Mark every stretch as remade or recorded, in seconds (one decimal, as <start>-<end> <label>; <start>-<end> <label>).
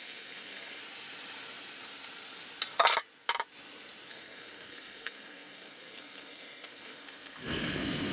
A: 0.0-0.8 remade; 0.8-4.1 recorded; 4.1-8.1 remade